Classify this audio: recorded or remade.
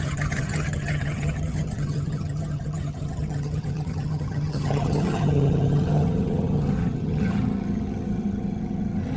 remade